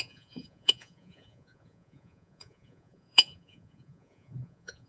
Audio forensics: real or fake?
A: fake